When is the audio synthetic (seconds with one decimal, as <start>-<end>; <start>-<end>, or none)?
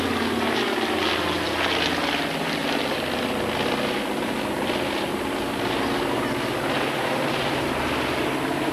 none